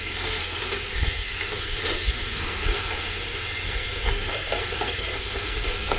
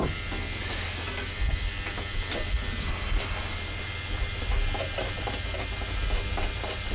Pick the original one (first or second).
second